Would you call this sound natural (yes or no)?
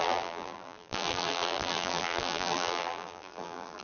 no